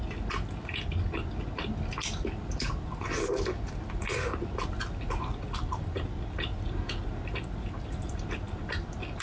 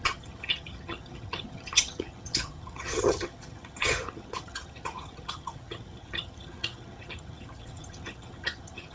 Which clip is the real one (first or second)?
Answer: first